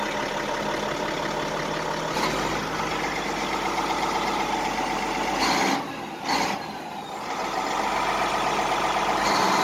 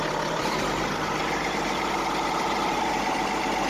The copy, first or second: second